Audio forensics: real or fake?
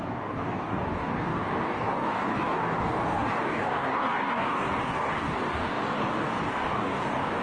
fake